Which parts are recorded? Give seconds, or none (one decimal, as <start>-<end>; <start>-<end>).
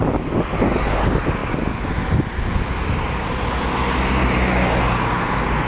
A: 0.0-5.7